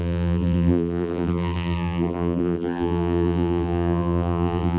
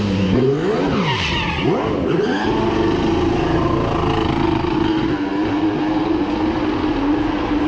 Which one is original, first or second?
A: second